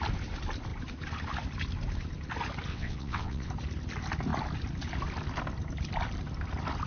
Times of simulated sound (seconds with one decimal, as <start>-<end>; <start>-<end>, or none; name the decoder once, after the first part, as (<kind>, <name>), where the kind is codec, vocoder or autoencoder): 2.7-3.5 (vocoder, WaveNeXt)